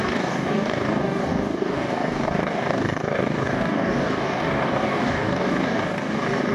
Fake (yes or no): yes